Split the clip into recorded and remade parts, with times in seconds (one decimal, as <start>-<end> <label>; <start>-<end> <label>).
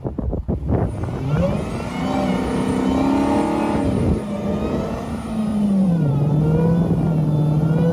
0.0-5.5 recorded; 5.5-6.1 remade; 6.1-7.9 recorded